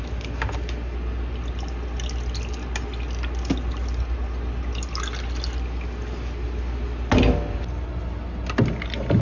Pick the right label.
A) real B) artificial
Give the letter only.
A